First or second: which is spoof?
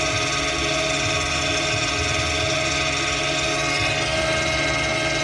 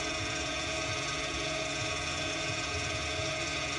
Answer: second